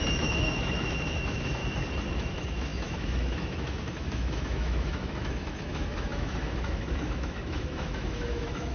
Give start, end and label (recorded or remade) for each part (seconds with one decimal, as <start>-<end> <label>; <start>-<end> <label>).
0.0-1.6 remade; 1.6-2.1 recorded; 2.1-8.7 remade